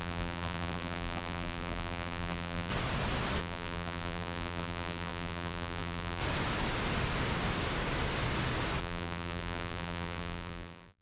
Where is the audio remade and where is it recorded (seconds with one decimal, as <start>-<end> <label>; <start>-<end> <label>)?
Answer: 0.0-2.7 remade; 2.7-3.4 recorded; 3.4-6.2 remade; 6.2-8.8 recorded; 8.8-11.0 remade